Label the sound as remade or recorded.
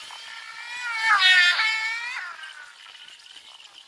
recorded